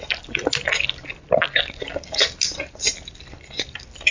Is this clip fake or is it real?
real